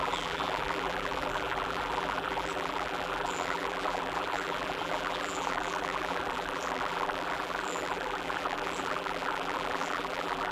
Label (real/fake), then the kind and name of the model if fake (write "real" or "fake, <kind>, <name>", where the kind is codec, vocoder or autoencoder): fake, vocoder, BigVGAN v2